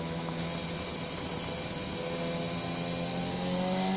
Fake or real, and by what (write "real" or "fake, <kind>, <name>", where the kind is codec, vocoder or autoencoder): real